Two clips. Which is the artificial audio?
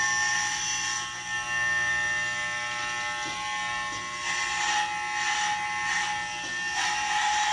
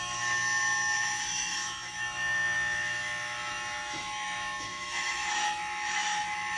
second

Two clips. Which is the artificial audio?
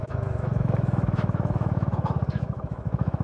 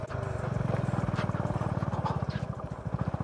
first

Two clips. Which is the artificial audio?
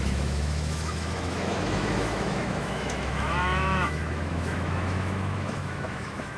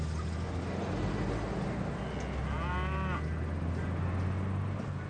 first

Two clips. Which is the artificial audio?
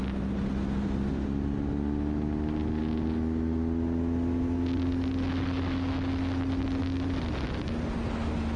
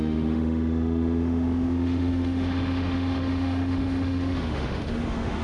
second